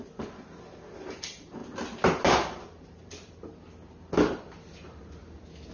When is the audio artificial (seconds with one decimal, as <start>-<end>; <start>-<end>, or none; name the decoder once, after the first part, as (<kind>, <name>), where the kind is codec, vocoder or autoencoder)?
none